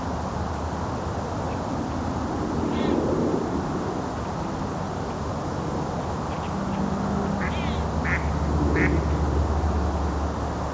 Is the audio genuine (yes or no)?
yes